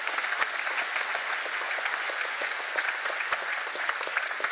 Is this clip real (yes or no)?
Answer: no